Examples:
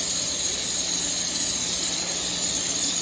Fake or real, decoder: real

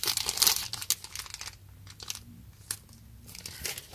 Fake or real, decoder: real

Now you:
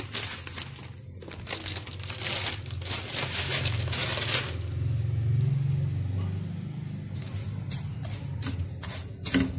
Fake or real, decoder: real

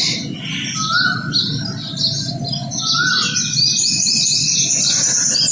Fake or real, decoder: real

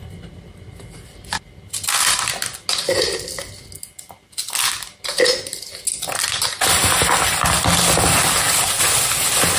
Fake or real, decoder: real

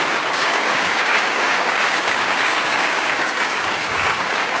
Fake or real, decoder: fake, codec, DAC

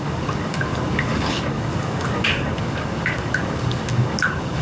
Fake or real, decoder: fake, codec, DAC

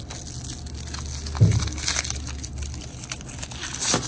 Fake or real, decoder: real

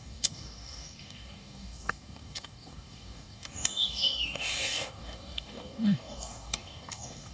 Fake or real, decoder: fake, codec, DAC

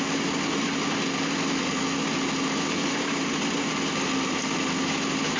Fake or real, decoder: real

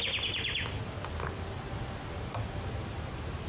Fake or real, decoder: real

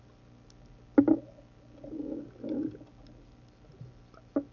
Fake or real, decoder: real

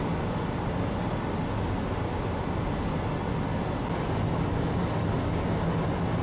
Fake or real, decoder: real